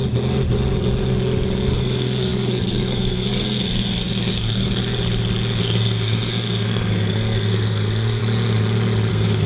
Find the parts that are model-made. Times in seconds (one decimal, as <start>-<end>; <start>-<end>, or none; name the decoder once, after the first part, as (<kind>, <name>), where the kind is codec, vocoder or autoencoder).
1.7-4.8 (codec, SNAC); 5.6-8.2; 9.1-9.5